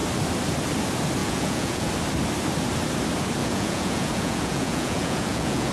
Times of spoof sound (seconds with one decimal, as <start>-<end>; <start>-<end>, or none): 1.2-1.9; 3.4-5.7